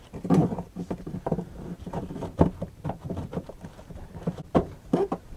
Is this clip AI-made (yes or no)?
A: yes